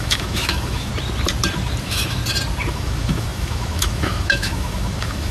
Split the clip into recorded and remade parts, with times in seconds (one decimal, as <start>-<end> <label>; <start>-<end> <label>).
0.0-0.9 remade; 0.9-1.8 recorded; 1.8-2.2 remade; 2.2-2.7 recorded; 2.7-5.3 remade